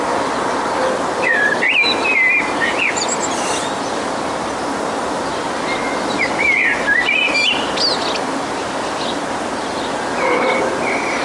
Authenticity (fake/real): real